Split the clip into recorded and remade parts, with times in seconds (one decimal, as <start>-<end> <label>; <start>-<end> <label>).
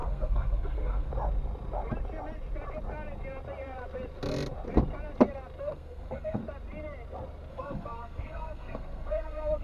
0.0-1.1 remade; 1.1-5.6 recorded; 5.6-6.4 remade; 6.4-7.5 recorded; 7.5-9.6 remade